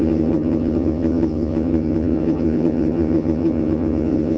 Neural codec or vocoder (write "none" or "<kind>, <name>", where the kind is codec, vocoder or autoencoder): vocoder, HiFi-GAN